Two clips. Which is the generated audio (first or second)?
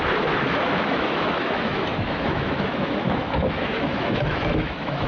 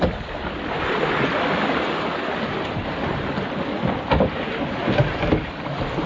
first